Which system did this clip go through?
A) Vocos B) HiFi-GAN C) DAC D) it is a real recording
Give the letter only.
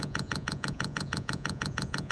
A